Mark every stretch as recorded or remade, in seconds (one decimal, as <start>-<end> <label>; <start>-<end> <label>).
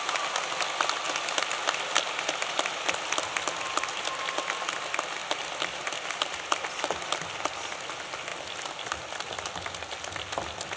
0.0-10.8 recorded